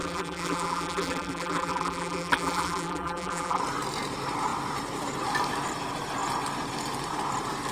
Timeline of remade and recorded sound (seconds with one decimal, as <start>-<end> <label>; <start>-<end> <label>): 0.0-3.6 remade; 3.6-7.7 recorded